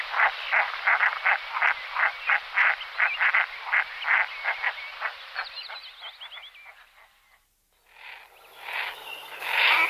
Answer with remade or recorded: recorded